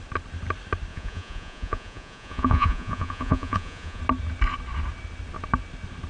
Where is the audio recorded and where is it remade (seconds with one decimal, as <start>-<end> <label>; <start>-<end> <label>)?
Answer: 0.0-0.9 recorded; 0.9-4.0 remade; 4.0-6.1 recorded